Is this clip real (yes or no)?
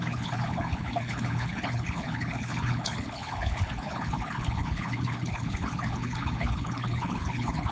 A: no